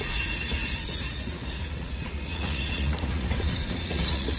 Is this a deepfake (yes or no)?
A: yes